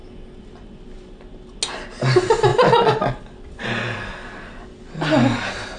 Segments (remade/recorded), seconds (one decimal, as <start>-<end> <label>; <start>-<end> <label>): 0.0-5.8 recorded